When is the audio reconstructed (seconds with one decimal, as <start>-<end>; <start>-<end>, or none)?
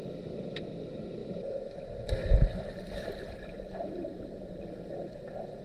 none